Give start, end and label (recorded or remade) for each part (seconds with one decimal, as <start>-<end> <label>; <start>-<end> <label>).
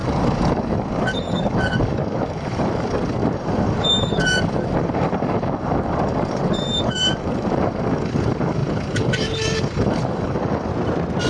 0.0-10.7 remade; 10.7-11.3 recorded